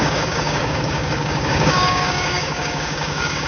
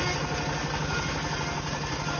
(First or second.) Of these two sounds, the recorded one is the second